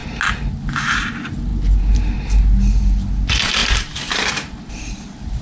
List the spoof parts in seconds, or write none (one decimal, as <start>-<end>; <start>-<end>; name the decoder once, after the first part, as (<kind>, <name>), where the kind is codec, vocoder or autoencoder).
none